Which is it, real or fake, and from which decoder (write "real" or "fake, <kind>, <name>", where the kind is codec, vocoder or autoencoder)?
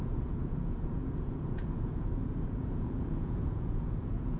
fake, vocoder, Vocos